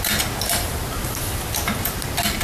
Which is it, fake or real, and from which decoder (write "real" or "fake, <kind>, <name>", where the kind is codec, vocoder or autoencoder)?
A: real